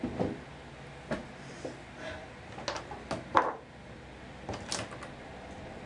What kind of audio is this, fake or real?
real